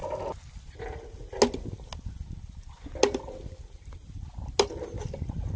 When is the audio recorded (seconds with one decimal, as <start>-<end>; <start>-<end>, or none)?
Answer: 0.0-5.6